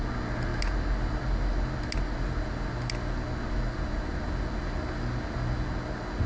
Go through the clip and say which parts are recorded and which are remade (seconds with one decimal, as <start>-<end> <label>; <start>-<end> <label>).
0.0-6.3 recorded

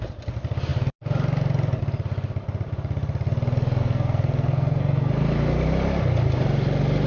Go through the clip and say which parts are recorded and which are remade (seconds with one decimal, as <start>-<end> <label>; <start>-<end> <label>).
0.0-3.8 recorded; 3.8-5.1 remade; 5.1-7.1 recorded

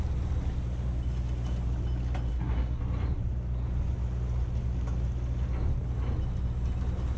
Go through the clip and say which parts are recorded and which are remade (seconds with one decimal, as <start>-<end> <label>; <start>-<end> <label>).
0.0-2.3 recorded; 2.3-2.8 remade; 2.8-7.2 recorded

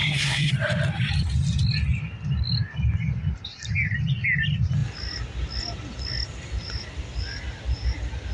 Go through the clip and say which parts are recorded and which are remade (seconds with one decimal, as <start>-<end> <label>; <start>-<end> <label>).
0.0-0.5 remade; 0.5-8.3 recorded